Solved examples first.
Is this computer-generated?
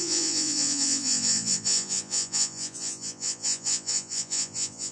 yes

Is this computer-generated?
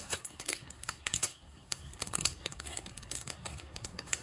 yes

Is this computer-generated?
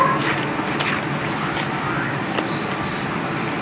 no